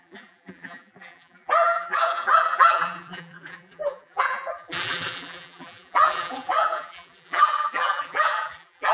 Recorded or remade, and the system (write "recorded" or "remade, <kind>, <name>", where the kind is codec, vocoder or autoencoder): remade, vocoder, BigVGAN v2